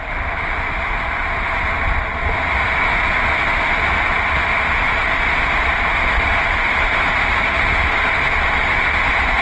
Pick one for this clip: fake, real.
real